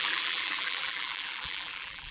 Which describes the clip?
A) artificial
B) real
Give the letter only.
A